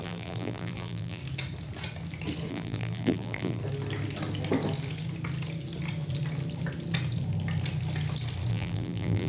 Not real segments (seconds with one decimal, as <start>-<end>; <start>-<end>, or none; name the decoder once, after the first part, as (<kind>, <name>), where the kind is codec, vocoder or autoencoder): 0.0-1.2 (vocoder, BigVGAN v2); 2.5-3.6; 8.5-9.3